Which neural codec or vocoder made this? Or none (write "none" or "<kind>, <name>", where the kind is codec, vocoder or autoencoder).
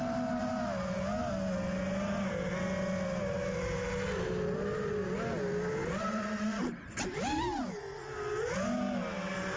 none